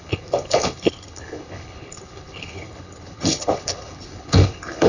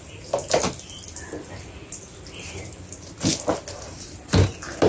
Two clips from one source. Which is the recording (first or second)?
second